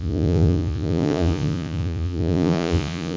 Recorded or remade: remade